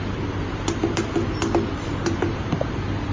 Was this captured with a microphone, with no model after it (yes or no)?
no